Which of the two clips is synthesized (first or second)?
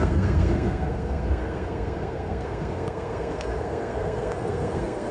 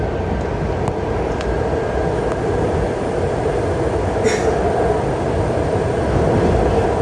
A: first